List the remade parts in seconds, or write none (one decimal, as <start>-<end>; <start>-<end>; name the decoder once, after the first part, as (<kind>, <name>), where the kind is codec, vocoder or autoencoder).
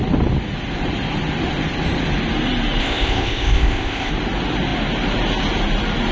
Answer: 2.8-4.1 (codec, ZipCodec)